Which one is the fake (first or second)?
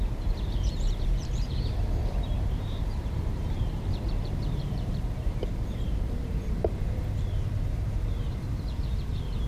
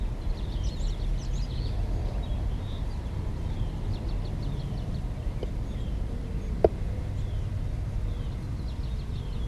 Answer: first